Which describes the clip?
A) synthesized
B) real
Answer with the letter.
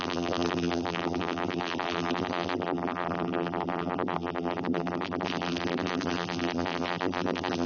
A